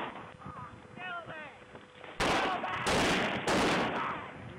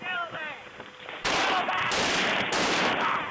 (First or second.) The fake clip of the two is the second